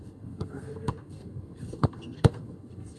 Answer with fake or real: fake